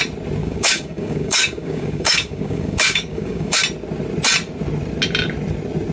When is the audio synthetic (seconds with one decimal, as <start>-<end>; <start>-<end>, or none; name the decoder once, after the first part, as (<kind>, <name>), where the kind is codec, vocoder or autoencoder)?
0.4-3.6 (codec, DAC)